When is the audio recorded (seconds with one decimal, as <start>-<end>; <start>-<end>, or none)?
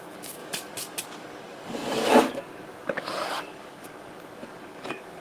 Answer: none